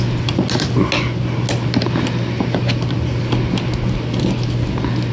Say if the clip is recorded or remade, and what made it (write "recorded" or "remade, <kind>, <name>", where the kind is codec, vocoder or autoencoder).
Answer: recorded